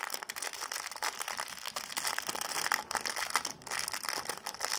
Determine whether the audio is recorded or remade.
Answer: recorded